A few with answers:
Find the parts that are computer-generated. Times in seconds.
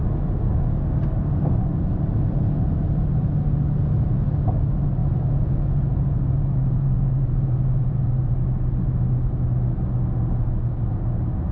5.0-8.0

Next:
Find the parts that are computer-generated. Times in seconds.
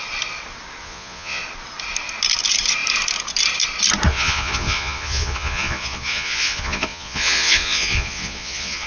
0.8-1.4; 4.1-8.9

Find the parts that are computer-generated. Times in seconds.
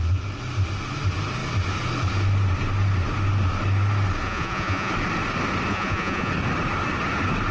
4.2-4.9; 5.7-6.3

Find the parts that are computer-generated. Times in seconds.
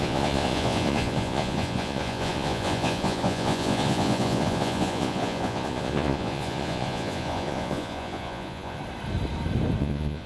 0.0-8.8; 9.8-10.3